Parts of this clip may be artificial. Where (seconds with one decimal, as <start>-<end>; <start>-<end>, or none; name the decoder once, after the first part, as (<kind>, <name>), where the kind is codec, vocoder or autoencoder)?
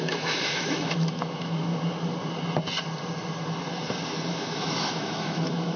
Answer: 0.0-1.7 (autoencoder, DAC-VAE); 4.3-5.8